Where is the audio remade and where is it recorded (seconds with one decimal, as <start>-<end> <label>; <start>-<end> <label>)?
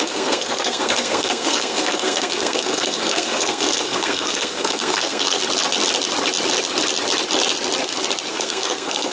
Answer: 0.0-5.4 remade; 5.4-8.3 recorded; 8.3-9.1 remade